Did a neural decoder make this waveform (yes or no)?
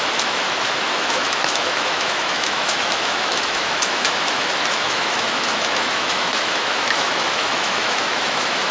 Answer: yes